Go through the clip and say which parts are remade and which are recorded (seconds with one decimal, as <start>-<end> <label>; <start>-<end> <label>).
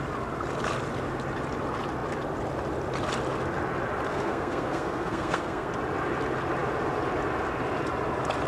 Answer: 0.0-4.1 recorded; 4.1-5.7 remade; 5.7-8.5 recorded